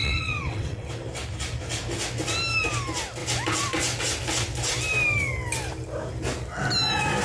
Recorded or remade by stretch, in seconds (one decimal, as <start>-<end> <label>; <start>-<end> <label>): 0.0-0.9 remade; 0.9-7.2 recorded